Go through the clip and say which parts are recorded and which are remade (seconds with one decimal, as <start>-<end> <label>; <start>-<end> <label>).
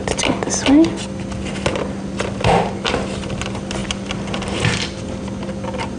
0.0-6.0 recorded